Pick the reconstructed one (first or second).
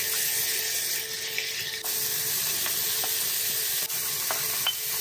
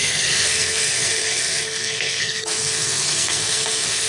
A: second